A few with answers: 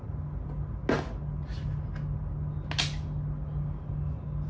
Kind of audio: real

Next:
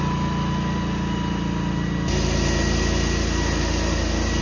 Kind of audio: real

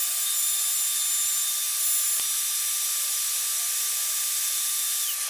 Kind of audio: real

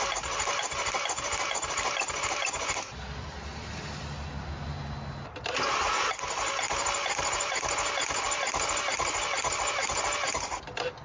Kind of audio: real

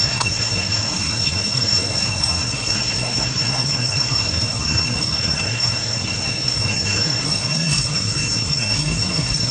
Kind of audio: fake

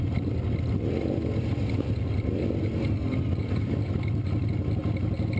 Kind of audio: real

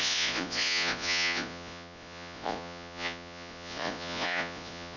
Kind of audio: fake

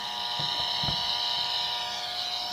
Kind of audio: real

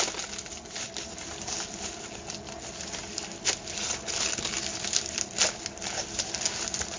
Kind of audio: real